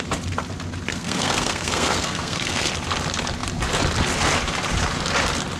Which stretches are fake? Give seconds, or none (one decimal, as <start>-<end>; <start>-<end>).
0.9-2.7